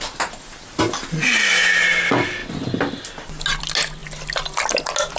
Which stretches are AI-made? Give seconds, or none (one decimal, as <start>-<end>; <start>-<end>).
none